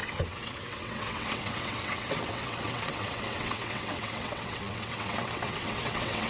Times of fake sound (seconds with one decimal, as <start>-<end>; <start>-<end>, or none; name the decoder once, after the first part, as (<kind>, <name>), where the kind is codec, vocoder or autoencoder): 0.0-6.3 (vocoder, WaveNeXt)